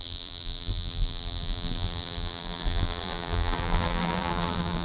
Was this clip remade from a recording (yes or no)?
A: yes